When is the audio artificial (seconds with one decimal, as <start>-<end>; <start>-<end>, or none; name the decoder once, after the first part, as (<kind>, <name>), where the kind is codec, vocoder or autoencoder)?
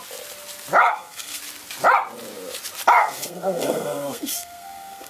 0.8-1.4 (codec, SNAC); 3.0-5.1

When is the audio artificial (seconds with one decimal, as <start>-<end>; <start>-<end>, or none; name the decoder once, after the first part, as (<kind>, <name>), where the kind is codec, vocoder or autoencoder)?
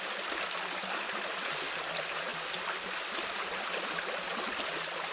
none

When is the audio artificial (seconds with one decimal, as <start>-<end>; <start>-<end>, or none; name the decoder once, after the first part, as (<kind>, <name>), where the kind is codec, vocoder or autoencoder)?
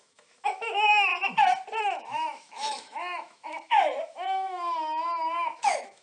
0.0-1.1 (autoencoder, DAC-VAE); 1.8-6.0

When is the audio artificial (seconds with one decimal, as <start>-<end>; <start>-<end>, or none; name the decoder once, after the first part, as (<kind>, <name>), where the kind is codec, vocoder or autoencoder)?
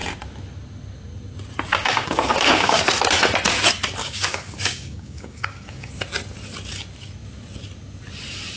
1.7-2.8 (codec, DAC); 4.0-5.9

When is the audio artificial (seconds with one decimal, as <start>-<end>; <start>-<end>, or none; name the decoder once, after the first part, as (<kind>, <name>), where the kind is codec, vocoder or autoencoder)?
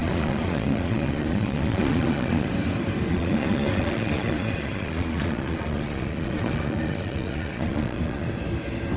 0.0-2.5 (vocoder, Vocos); 3.1-8.3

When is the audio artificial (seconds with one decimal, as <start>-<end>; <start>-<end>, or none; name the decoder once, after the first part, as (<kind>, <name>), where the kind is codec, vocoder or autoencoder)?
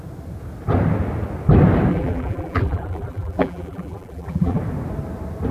1.9-4.6 (vocoder, BigVGAN v2)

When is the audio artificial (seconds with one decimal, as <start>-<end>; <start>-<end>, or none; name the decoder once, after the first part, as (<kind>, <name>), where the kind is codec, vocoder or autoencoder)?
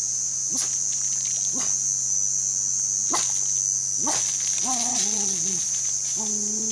4.9-5.7 (vocoder, Vocos)